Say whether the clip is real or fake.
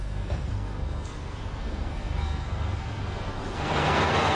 fake